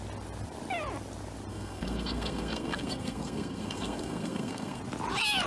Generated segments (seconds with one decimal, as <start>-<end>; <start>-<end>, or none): 1.5-4.8

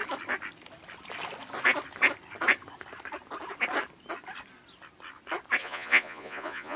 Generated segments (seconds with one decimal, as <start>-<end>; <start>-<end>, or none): 5.6-6.8

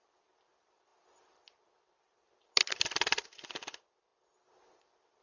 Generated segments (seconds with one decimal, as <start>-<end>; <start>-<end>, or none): none

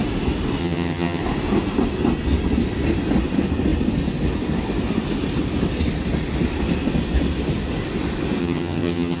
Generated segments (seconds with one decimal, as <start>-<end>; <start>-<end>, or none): 0.6-1.2; 8.4-9.2

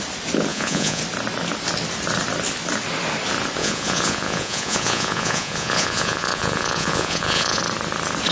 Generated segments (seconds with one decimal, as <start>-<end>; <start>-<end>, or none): 0.5-1.0; 3.6-7.6

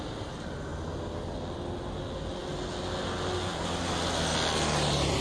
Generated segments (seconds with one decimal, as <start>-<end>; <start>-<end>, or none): none